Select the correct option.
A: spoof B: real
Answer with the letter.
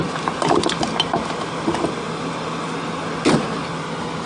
B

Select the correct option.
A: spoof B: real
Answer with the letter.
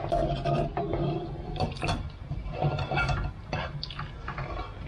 B